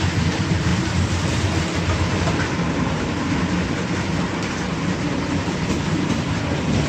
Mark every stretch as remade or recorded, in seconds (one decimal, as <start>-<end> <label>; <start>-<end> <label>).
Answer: 0.0-6.9 remade